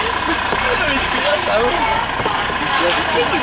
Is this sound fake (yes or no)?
no